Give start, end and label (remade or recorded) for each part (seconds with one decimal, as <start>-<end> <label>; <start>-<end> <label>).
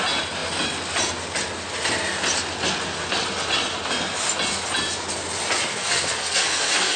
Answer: 0.0-5.7 recorded; 5.7-7.0 remade